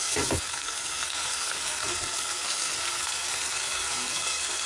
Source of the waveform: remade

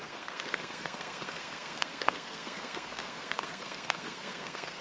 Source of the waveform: remade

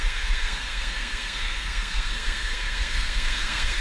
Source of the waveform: remade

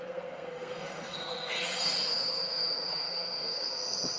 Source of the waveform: remade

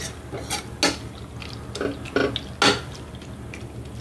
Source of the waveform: recorded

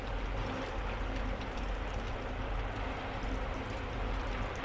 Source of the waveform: recorded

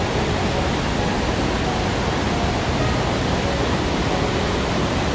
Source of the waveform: recorded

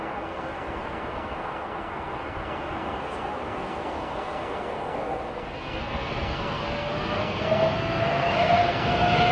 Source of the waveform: remade